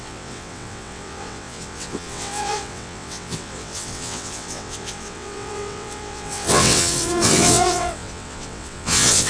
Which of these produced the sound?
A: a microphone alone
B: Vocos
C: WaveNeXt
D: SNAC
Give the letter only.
C